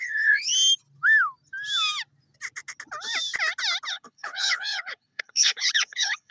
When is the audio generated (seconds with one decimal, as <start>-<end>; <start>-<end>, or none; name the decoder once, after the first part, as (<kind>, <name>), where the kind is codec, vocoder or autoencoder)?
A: 0.0-0.5 (codec, HILCodec); 3.9-6.3